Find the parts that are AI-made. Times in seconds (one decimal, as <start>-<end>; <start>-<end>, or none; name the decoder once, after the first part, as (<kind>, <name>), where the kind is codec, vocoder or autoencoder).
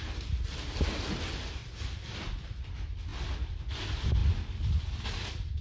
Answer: 1.6-2.7 (vocoder, BigVGAN v2)